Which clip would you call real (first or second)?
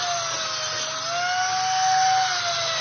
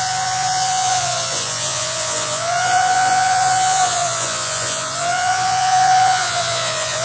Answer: first